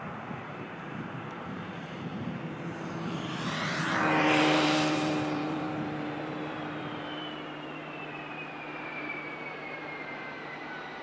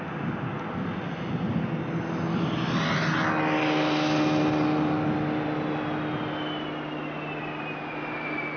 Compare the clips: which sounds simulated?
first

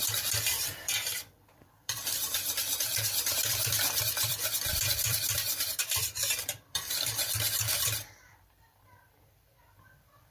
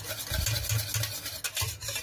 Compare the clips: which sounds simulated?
first